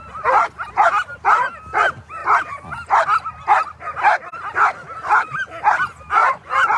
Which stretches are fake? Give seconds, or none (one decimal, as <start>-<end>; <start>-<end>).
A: 6.2-6.8